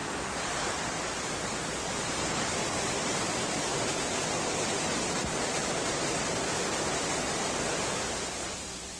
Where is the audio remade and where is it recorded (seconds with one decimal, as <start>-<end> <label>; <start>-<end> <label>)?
0.0-9.0 recorded